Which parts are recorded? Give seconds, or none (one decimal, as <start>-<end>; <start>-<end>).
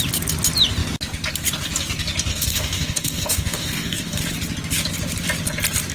0.0-2.3; 4.2-5.9